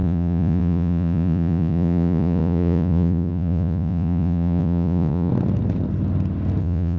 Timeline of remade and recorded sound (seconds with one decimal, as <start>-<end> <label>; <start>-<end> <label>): 0.0-5.3 remade; 5.3-6.6 recorded; 6.6-7.0 remade